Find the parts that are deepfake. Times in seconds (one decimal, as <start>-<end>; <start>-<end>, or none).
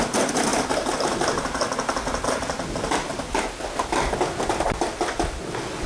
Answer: none